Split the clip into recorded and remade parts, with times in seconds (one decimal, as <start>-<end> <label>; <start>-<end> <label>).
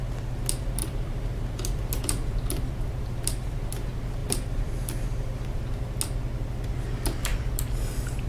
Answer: 0.0-0.8 recorded; 0.8-3.7 remade; 3.7-4.2 recorded; 4.2-5.6 remade; 5.6-8.3 recorded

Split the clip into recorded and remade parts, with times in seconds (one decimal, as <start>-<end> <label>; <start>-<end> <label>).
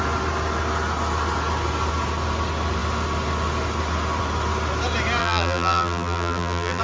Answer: 0.0-5.2 recorded; 5.2-6.8 remade